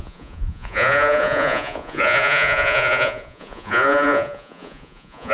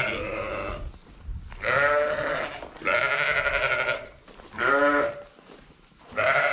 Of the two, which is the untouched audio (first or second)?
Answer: second